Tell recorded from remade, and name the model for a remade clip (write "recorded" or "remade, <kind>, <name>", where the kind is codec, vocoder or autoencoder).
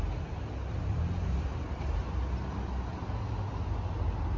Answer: recorded